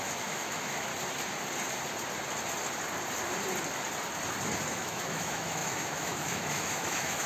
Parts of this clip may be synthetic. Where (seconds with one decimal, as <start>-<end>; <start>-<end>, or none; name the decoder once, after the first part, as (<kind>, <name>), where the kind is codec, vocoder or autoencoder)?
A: 0.0-0.9 (autoencoder, DAC-VAE); 4.7-7.3